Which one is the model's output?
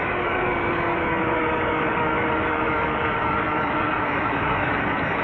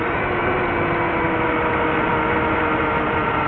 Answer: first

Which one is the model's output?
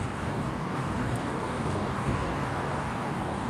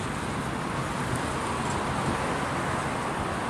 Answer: first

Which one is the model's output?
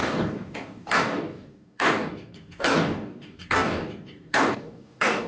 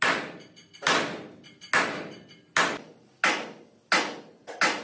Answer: first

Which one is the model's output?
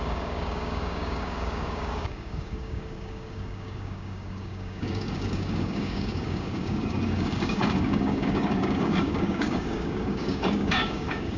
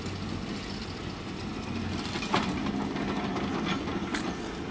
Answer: first